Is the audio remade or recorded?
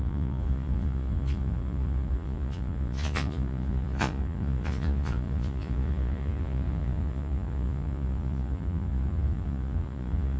remade